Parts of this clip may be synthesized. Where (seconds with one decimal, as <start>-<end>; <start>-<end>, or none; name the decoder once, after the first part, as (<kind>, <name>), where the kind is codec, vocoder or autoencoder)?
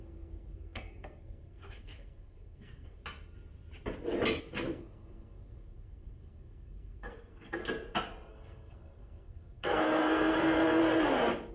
0.0-3.0 (codec, SNAC); 4.4-7.6; 8.3-10.8